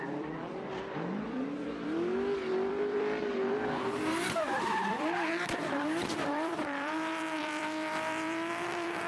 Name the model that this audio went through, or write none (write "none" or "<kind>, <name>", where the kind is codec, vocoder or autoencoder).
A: vocoder, BigVGAN v2